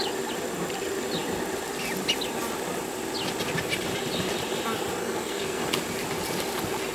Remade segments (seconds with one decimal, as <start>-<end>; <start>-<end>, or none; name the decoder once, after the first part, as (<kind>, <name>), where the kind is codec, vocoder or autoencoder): 5.0-5.7 (codec, SNAC)